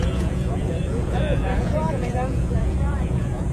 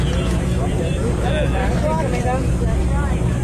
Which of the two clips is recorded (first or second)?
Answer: second